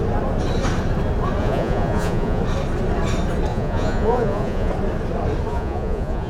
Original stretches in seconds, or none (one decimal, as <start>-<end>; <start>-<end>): 0.0-1.4; 2.4-3.5; 4.7-5.5